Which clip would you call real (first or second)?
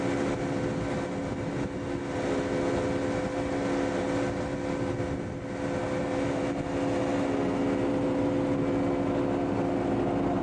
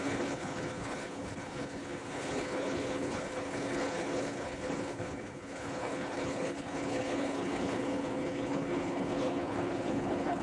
first